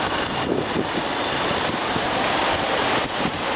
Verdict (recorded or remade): remade